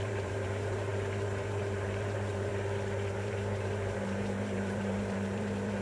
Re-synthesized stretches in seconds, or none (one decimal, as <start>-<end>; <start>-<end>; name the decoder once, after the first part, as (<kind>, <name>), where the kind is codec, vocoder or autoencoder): 0.0-2.5 (vocoder, BigVGAN v2); 3.1-5.8